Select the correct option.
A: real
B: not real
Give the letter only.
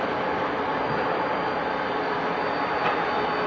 A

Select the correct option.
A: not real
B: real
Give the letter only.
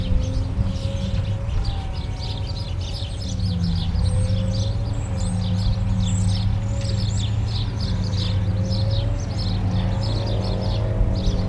B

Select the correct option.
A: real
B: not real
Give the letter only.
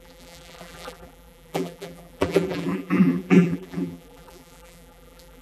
B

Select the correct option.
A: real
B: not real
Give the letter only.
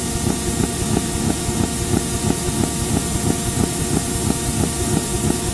A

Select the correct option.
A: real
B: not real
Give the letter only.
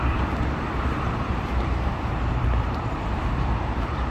B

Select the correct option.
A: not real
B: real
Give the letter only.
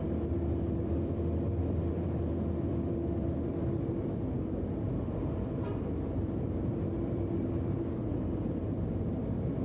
A